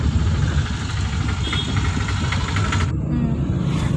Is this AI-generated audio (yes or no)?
no